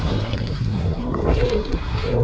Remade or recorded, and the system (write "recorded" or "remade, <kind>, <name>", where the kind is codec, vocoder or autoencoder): remade, codec, SNAC